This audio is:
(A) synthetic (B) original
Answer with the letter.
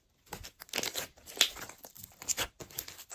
B